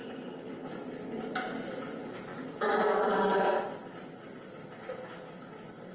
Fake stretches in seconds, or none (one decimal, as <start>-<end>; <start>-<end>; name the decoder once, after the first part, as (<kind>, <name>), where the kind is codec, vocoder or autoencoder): none